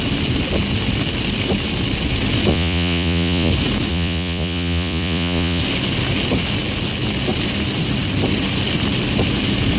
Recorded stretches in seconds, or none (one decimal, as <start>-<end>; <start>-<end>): 0.0-2.5; 3.5-3.9; 5.6-9.8